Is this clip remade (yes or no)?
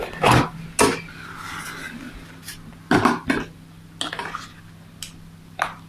no